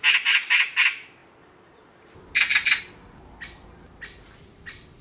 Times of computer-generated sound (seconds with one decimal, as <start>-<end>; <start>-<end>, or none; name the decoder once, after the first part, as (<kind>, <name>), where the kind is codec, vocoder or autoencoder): none